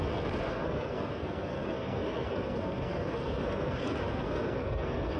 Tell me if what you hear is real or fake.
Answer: fake